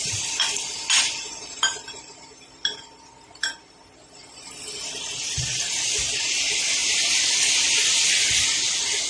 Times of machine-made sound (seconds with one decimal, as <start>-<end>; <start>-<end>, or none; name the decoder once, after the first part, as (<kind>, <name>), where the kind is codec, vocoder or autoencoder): none